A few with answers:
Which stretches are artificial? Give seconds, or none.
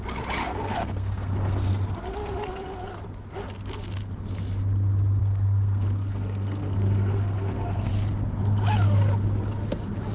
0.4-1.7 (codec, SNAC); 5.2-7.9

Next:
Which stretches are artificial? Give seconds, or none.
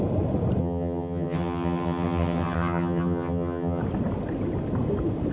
0.6-3.8 (vocoder, HiFi-GAN)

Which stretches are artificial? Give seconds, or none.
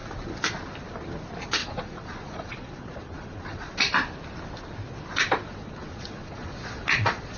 1.6-3.7 (vocoder, Vocos); 5.4-7.4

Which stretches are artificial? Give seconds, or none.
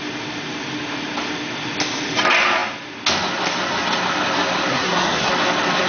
4.7-5.3 (codec, SNAC)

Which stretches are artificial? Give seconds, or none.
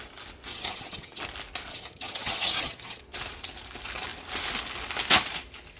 0.5-1.2 (vocoder, HiFi-GAN); 1.7-3.0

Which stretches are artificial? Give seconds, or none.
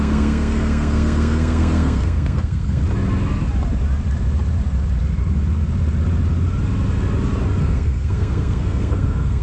0.0-2.8 (codec, SNAC); 7.6-9.4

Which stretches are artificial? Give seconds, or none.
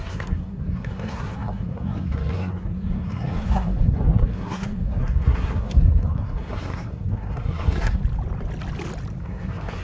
0.0-8.0 (codec, SNAC); 9.2-9.8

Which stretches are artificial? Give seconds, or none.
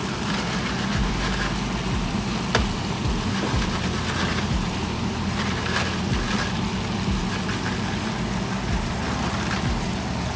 4.3-5.8 (vocoder, BigVGAN v2)